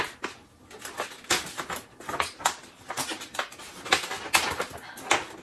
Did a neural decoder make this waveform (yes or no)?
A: no